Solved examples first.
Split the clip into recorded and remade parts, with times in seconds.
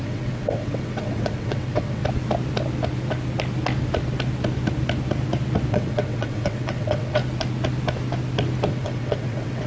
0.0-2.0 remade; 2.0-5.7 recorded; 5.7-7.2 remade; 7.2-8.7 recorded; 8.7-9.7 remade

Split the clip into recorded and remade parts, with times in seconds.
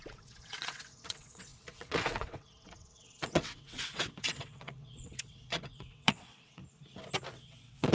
0.0-6.6 remade; 6.6-7.3 recorded; 7.3-7.9 remade